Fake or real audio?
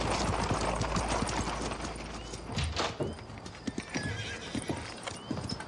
real